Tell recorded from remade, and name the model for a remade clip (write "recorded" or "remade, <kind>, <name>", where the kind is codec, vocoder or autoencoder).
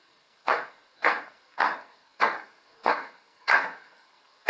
remade, codec, SNAC